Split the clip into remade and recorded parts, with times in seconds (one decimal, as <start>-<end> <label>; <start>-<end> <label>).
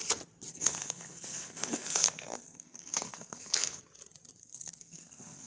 0.0-0.5 recorded; 0.5-3.8 remade; 3.8-4.4 recorded; 4.4-5.5 remade